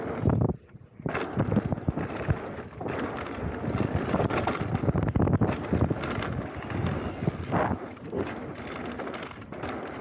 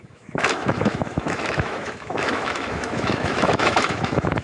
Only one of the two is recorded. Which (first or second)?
first